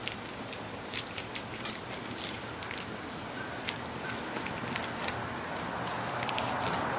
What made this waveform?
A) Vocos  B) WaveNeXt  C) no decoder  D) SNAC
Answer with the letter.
C